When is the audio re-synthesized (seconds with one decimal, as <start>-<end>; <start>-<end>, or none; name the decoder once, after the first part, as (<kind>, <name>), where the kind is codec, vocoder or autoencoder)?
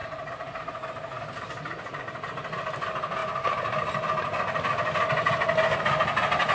0.0-1.2 (vocoder, BigVGAN v2)